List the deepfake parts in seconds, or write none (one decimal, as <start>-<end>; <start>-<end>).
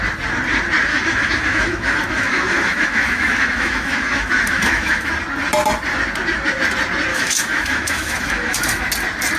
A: 0.9-5.1; 7.1-8.8